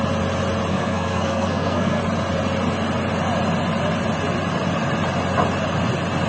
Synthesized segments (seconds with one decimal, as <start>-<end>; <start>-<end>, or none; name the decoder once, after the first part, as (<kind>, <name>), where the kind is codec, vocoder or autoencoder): 0.7-2.0 (codec, SNAC)